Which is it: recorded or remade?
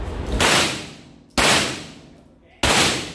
recorded